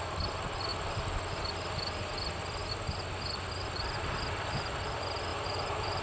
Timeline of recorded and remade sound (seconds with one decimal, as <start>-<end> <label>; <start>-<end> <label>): 0.0-5.3 recorded; 5.3-6.0 remade